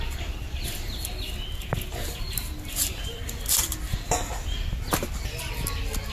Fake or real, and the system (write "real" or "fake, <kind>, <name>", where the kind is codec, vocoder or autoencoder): real